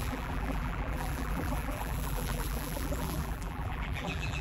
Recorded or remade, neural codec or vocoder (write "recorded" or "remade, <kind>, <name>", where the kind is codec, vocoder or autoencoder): remade, vocoder, BigVGAN v2